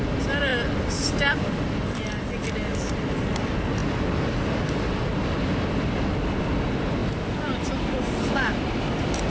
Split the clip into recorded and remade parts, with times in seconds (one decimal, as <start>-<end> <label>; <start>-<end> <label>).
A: 0.0-9.3 recorded